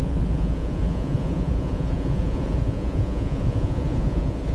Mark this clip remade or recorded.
remade